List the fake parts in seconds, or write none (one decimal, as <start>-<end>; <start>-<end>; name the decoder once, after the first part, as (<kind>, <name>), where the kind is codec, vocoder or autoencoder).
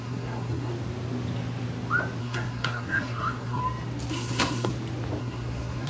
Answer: 0.0-0.7 (codec, SNAC); 2.2-3.6; 4.1-4.7; 5.2-5.9